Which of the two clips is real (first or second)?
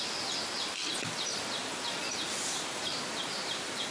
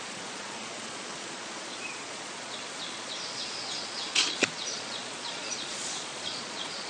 first